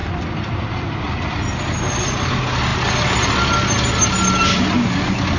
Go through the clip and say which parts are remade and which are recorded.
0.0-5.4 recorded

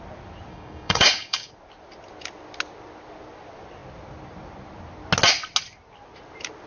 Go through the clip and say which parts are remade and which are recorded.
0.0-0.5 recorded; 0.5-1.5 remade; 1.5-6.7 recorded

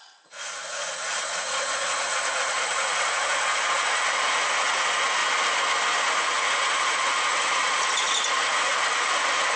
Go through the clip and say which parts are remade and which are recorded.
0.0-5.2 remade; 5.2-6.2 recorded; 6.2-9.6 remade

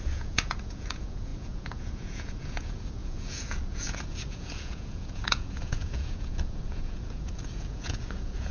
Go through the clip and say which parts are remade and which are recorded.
0.0-8.5 remade